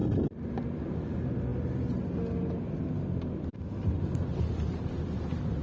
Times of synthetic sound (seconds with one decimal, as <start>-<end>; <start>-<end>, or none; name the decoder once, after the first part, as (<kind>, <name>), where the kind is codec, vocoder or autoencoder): none

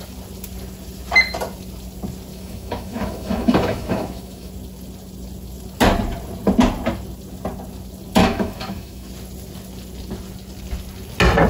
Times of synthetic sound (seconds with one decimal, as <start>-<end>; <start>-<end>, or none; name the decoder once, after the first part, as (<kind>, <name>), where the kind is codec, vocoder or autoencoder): 2.3-4.5 (autoencoder, DAC-VAE); 8.2-9.1

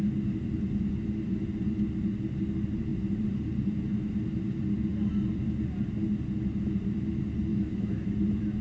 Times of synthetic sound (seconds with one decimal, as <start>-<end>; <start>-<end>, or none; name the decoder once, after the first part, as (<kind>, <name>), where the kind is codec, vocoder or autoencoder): 7.5-8.1 (autoencoder, DAC-VAE)

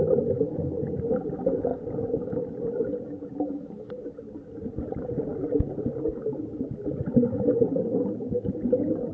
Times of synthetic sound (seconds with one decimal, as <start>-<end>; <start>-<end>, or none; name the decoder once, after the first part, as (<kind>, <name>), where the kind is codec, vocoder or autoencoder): none